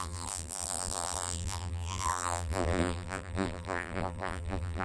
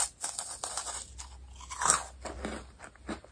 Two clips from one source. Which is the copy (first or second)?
first